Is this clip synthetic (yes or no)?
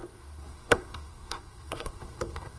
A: yes